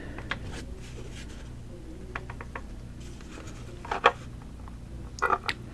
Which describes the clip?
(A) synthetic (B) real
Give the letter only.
B